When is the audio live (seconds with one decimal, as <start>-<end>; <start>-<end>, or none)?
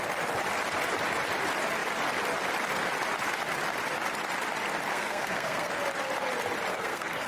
0.0-4.9; 5.7-6.7